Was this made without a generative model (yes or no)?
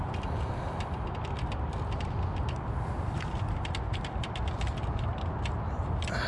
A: yes